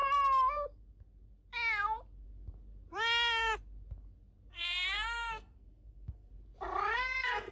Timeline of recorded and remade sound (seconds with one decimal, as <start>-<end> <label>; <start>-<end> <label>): 0.0-4.5 recorded; 4.5-6.3 remade; 6.3-6.9 recorded; 6.9-7.5 remade